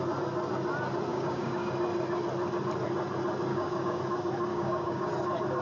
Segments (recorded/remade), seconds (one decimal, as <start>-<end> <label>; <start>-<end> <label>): 0.0-1.1 recorded; 1.1-1.7 remade; 1.7-3.5 recorded; 3.5-4.0 remade; 4.0-4.5 recorded; 4.5-5.1 remade; 5.1-5.6 recorded